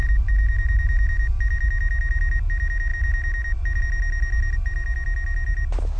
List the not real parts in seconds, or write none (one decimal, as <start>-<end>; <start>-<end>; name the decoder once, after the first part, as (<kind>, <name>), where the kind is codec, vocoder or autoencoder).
none